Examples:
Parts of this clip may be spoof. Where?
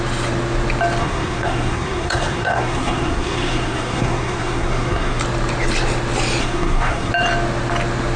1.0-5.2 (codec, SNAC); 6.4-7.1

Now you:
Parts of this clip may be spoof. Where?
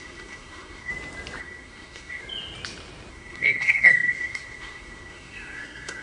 0.0-0.9 (codec, SNAC); 1.4-2.2; 3.1-6.0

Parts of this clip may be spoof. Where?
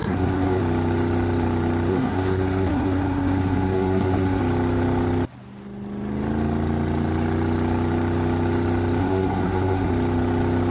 0.0-0.6 (codec, SNAC); 1.9-4.4; 9.0-9.9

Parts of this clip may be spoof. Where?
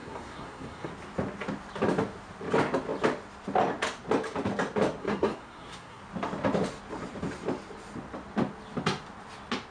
0.0-0.9 (codec, SNAC); 5.0-6.0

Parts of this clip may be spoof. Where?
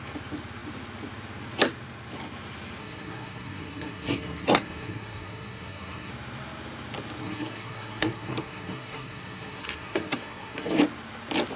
2.8-6.1 (codec, SNAC); 7.2-10.8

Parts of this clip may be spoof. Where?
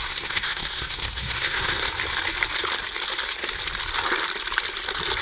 0.0-1.9 (codec, SNAC)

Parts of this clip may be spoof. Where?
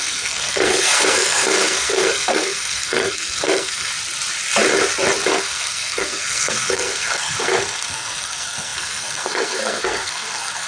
0.0-3.9 (codec, SNAC); 5.3-10.7